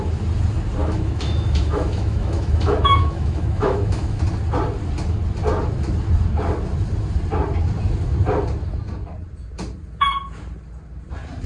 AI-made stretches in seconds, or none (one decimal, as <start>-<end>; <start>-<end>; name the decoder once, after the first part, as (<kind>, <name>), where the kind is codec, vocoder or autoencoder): 0.8-4.2 (autoencoder, DAC-VAE)